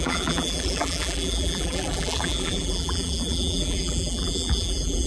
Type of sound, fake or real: fake